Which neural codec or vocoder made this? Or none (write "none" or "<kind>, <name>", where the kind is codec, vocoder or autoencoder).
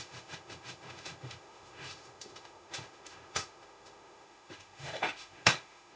autoencoder, DAC-VAE